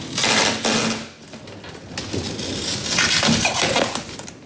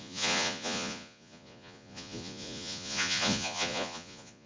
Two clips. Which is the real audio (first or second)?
first